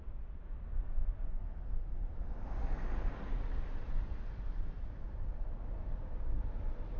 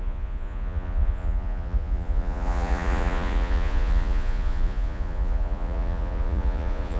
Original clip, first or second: first